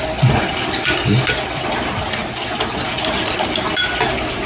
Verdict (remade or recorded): recorded